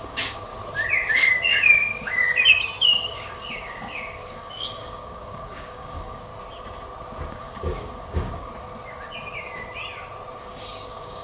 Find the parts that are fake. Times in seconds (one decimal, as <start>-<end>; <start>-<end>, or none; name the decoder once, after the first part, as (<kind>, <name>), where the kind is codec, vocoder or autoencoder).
0.0-0.5 (codec, DAC); 1.1-6.3; 7.3-8.5; 10.4-11.2

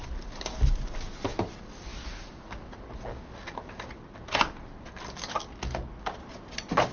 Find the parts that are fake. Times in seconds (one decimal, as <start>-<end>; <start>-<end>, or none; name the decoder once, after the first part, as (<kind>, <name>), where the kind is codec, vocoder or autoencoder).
none

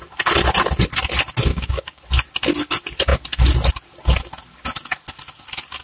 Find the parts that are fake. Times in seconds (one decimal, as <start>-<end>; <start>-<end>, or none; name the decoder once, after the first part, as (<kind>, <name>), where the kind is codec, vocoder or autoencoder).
1.5-2.0 (codec, DAC)

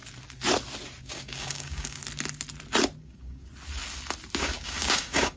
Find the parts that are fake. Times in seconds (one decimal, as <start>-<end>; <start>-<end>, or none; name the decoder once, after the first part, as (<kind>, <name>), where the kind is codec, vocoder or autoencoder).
1.0-2.0 (codec, DAC); 3.0-3.5; 4.4-5.4

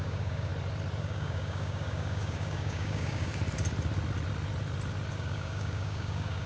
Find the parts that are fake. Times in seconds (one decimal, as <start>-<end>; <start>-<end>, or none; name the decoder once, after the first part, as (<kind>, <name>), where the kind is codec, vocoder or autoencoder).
0.0-0.5 (codec, DAC); 1.0-3.3; 5.1-6.5